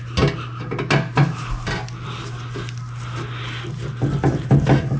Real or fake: real